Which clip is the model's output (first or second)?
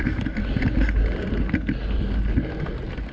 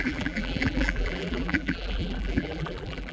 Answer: second